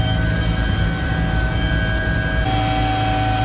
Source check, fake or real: real